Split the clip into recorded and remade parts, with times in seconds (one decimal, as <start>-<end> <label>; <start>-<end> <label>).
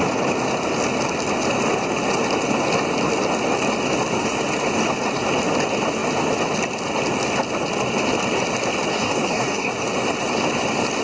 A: 0.0-8.9 recorded; 8.9-9.7 remade; 9.7-11.0 recorded